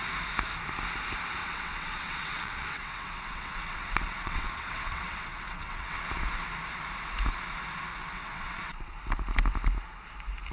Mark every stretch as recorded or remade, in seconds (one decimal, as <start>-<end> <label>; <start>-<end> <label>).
0.0-1.4 recorded; 1.4-6.0 remade; 6.0-7.9 recorded; 7.9-9.0 remade; 9.0-10.5 recorded